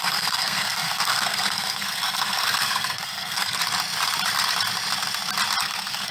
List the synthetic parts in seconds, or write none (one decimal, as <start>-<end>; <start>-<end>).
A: 0.0-3.6; 5.6-6.1